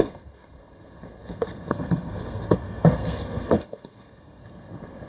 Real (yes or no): no